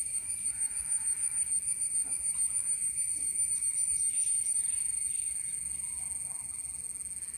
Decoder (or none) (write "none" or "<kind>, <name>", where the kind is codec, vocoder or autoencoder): none